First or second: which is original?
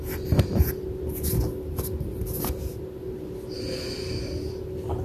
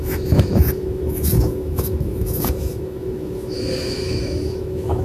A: first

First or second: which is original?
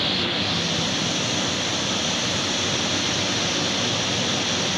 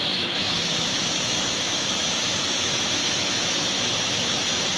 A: first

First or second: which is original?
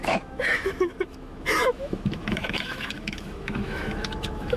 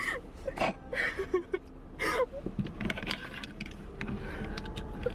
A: second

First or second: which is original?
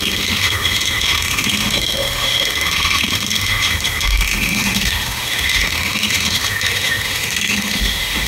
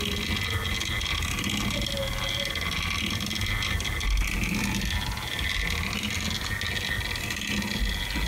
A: second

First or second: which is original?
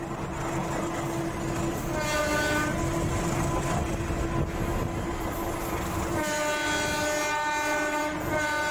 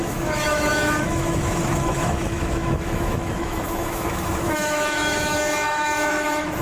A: first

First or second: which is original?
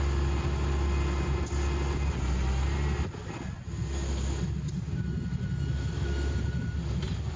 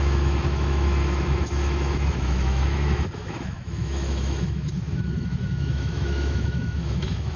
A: first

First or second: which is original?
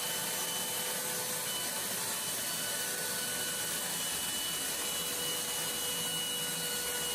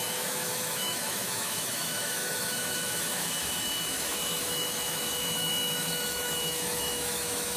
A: first